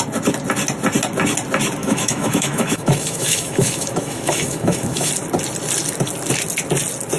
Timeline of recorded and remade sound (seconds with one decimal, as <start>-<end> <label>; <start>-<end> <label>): 0.0-1.8 recorded; 1.8-5.1 remade; 5.1-7.2 recorded